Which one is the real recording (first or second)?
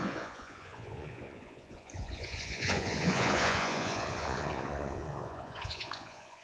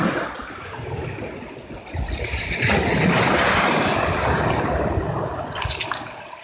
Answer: second